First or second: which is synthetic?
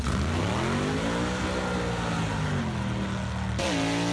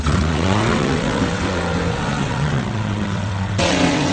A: second